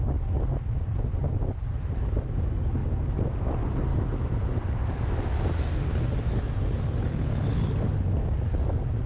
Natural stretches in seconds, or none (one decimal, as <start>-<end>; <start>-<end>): 0.0-1.2; 2.4-3.9; 5.1-9.1